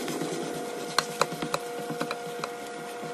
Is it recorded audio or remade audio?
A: recorded